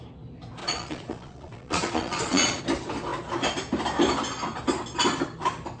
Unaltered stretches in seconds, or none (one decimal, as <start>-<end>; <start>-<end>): 0.0-0.6; 2.6-5.8